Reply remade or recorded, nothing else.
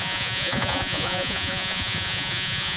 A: remade